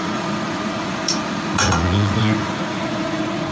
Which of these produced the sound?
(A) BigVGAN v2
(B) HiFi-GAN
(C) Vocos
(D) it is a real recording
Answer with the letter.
C